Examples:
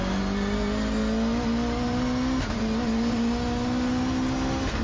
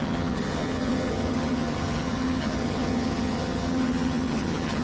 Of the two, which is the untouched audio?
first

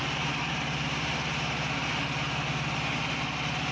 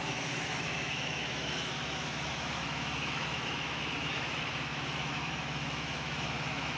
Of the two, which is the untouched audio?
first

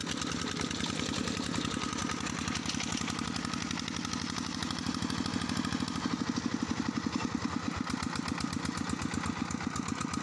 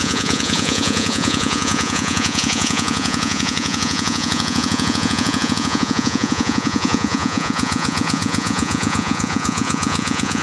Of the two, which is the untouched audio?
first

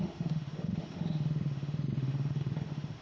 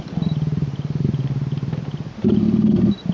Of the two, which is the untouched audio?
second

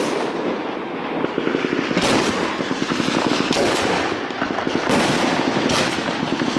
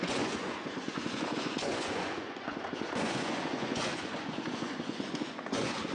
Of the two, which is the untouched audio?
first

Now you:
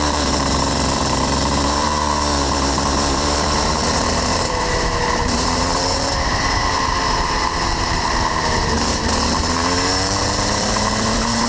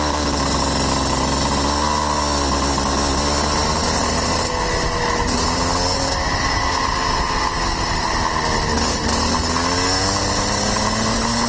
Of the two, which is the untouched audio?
second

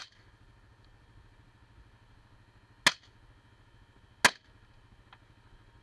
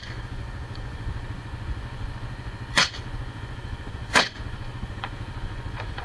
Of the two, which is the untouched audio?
first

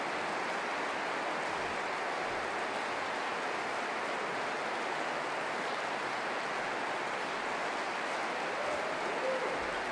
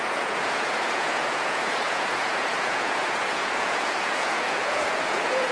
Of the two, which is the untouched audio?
first